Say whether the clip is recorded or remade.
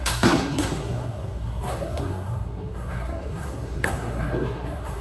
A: remade